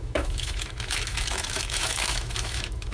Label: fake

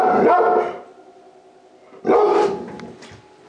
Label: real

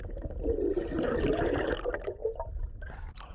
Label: real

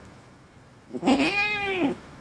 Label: fake